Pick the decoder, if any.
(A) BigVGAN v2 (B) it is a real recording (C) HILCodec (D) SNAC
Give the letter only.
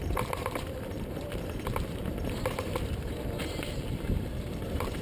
A